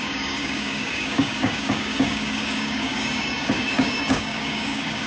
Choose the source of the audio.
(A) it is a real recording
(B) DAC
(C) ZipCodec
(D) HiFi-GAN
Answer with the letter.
B